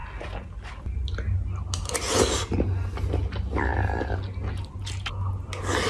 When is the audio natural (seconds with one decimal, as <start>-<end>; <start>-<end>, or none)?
0.0-5.9